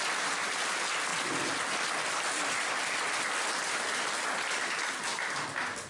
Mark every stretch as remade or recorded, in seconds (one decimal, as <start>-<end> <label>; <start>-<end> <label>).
0.0-5.9 recorded